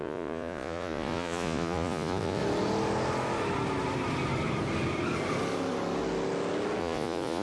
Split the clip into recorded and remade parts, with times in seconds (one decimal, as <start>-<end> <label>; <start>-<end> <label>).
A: 0.0-2.4 remade; 2.4-6.8 recorded; 6.8-7.4 remade